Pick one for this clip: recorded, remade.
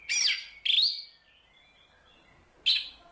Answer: recorded